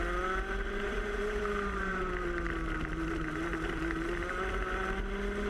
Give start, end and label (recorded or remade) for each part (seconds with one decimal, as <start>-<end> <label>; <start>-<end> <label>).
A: 0.0-0.9 recorded; 0.9-2.1 remade; 2.1-5.5 recorded